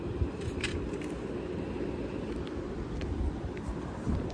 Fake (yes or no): no